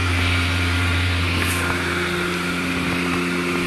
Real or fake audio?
fake